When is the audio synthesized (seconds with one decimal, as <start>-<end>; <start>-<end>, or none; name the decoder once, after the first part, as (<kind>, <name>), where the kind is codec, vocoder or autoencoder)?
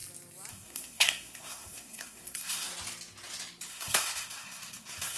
0.5-2.7 (codec, SNAC); 3.7-5.2